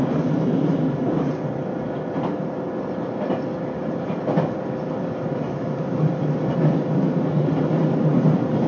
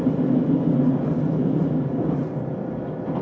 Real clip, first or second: second